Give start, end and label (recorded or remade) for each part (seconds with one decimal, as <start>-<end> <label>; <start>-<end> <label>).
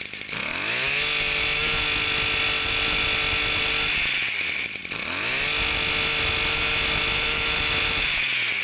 0.0-8.6 recorded